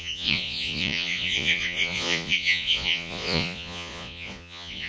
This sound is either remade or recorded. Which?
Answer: remade